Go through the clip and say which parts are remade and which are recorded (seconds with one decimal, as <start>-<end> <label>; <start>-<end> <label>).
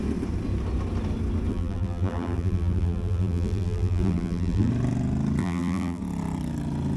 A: 0.0-1.5 recorded; 1.5-4.7 remade; 4.7-5.4 recorded; 5.4-6.0 remade; 6.0-7.0 recorded